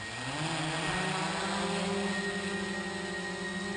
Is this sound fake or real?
real